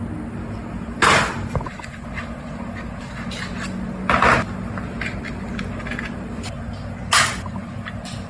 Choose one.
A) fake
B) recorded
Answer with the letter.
B